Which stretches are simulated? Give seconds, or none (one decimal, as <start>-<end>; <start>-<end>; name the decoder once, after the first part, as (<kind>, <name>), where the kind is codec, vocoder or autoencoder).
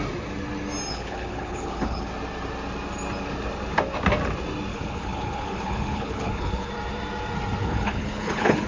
0.9-2.1 (codec, HILCodec); 4.7-6.7; 7.6-8.7